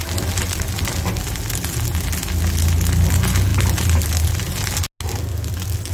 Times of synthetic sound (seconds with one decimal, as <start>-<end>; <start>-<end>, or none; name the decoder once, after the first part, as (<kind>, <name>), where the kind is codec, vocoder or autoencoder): none